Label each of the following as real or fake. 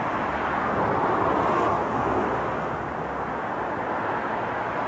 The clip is real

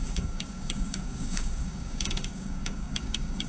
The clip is fake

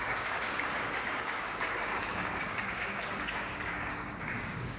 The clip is fake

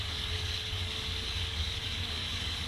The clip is fake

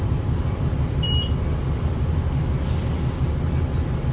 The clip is real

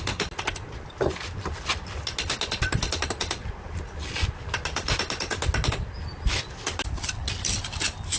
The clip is real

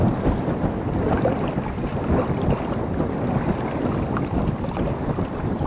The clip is real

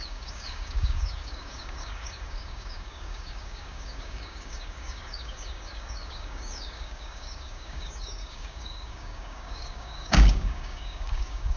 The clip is fake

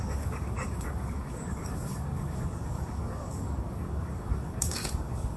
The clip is fake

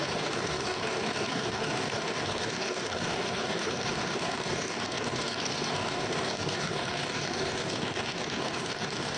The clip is fake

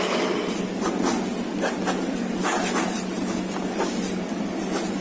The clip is real